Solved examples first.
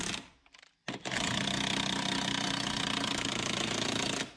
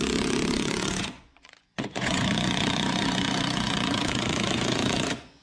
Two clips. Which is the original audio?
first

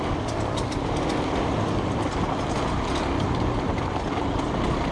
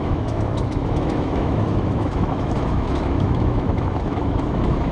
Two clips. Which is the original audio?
first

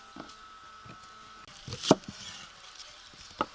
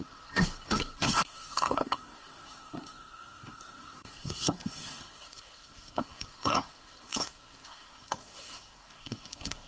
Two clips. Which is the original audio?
first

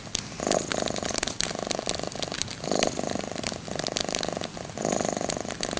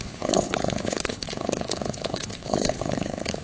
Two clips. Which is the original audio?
first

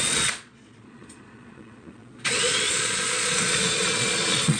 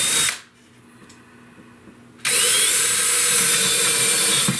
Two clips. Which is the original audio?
second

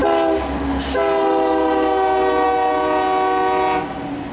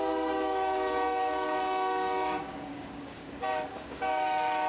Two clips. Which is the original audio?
first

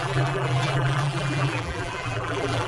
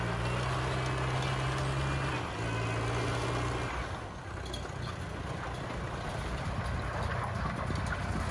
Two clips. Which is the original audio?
second